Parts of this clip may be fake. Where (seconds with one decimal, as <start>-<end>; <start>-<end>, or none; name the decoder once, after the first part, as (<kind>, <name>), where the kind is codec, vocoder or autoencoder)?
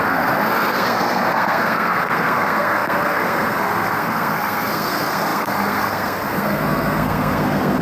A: 0.0-7.8 (codec, SNAC)